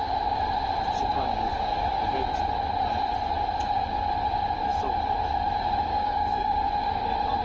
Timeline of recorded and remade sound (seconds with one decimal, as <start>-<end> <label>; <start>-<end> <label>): 0.0-1.1 recorded; 1.1-1.9 remade; 1.9-5.9 recorded; 5.9-6.6 remade; 6.6-7.4 recorded